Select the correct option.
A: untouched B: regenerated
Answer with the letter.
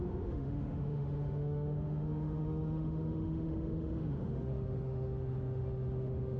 B